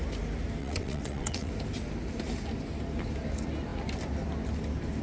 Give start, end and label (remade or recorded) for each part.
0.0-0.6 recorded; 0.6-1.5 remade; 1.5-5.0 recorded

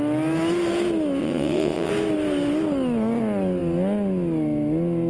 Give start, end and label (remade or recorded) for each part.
0.0-1.2 recorded; 1.2-1.9 remade; 1.9-5.1 recorded